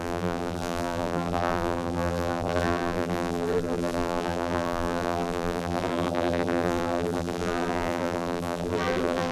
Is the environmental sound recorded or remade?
remade